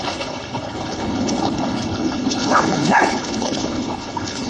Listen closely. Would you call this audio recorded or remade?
remade